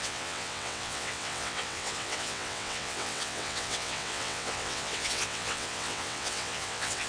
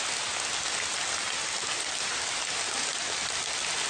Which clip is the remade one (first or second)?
first